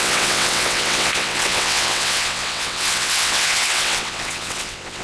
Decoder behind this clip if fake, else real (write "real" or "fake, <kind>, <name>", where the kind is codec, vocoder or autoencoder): fake, vocoder, WaveNeXt